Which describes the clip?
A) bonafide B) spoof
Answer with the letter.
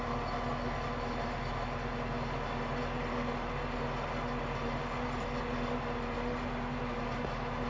A